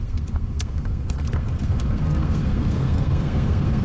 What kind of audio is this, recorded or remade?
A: remade